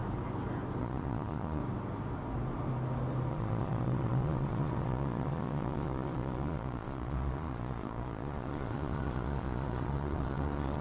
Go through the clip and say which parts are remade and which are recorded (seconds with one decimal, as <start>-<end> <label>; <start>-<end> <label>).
0.0-0.8 recorded; 0.8-1.6 remade; 1.6-3.3 recorded; 3.3-10.8 remade